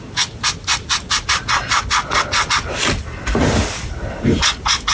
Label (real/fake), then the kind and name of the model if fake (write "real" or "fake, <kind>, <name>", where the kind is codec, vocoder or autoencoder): real